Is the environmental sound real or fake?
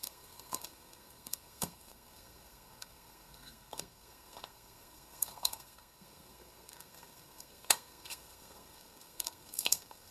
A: fake